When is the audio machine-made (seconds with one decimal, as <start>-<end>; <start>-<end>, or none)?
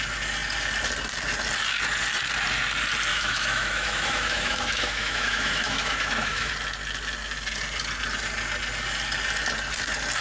3.1-6.5